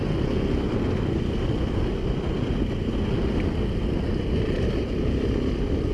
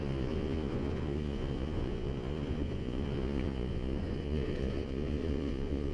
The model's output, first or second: second